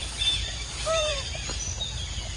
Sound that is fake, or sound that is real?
fake